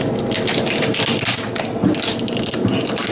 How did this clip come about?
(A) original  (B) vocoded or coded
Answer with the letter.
A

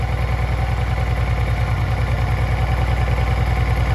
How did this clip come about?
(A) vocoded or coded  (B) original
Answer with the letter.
B